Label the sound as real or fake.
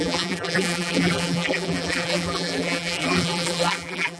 fake